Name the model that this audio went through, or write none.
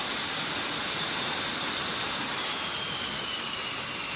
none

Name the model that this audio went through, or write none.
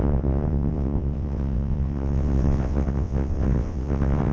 vocoder, WaveNeXt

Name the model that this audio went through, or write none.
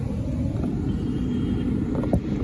none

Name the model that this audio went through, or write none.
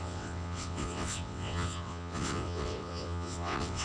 vocoder, WaveNeXt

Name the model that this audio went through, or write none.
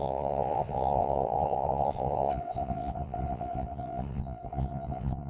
vocoder, WaveNeXt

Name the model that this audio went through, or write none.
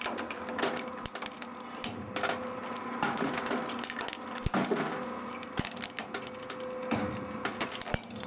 none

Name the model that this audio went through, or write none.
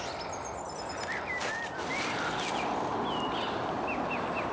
none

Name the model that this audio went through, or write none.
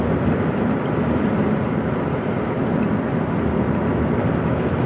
none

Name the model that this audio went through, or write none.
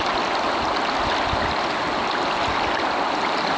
none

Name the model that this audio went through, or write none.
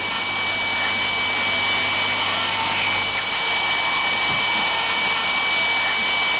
none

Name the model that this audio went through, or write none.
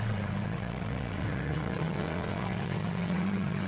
vocoder, WaveNeXt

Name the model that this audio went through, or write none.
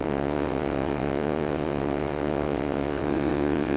vocoder, WaveNeXt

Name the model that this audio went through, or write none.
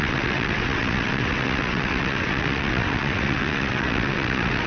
vocoder, WaveNeXt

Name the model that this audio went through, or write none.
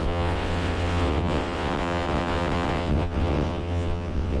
vocoder, WaveNeXt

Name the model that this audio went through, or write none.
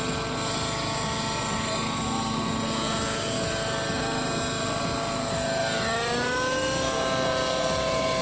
none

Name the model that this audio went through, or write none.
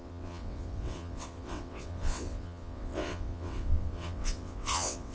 vocoder, WaveNeXt